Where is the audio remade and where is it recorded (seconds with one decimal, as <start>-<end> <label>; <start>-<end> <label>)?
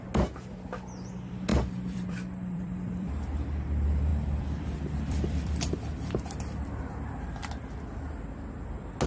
0.0-1.5 recorded; 1.5-3.1 remade; 3.1-4.1 recorded; 4.1-6.7 remade; 6.7-9.1 recorded